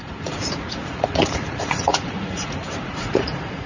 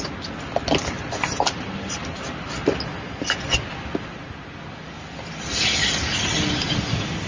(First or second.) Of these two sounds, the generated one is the first